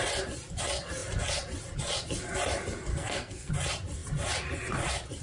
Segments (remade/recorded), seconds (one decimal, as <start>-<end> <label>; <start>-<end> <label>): 0.0-2.9 recorded; 2.9-3.5 remade; 3.5-5.2 recorded